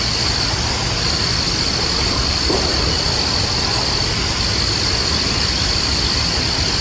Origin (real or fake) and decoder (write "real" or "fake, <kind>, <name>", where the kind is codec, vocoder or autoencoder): real